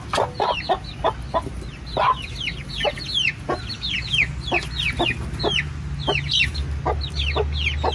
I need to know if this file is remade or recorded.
recorded